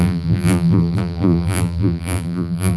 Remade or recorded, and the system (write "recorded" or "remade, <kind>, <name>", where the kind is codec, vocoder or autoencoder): remade, vocoder, BigVGAN v2